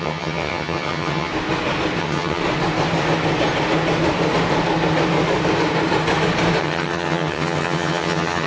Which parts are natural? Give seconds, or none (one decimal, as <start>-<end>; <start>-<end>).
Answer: 1.3-2.0; 2.4-6.6